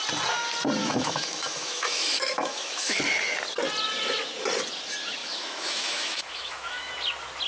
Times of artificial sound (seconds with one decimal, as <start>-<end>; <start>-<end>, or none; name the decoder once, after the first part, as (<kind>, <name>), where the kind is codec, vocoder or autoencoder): 0.8-3.0 (autoencoder, DAC-VAE); 5.2-6.9